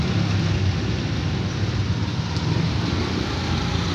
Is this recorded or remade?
recorded